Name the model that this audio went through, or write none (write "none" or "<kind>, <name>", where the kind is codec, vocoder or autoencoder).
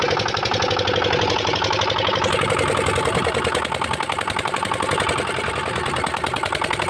none